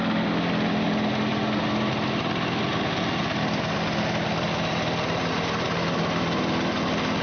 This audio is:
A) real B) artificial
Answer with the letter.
A